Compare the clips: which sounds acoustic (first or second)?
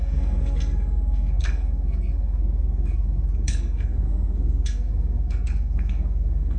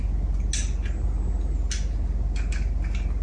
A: second